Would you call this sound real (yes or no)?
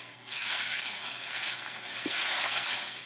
no